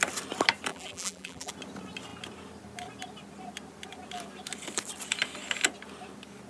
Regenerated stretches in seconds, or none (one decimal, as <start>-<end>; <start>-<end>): 0.7-1.5